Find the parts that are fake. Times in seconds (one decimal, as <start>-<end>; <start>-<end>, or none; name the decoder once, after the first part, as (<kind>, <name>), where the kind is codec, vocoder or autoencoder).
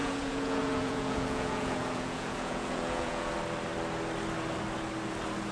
0.0-3.3 (vocoder, Vocos)